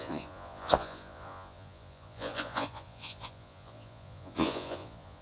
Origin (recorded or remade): remade